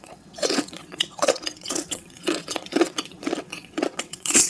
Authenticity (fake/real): fake